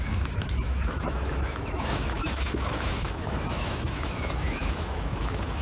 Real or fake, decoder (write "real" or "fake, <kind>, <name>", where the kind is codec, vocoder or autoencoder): fake, autoencoder, DAC-VAE